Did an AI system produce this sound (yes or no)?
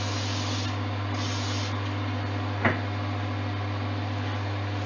no